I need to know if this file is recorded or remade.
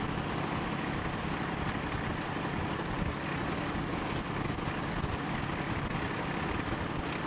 recorded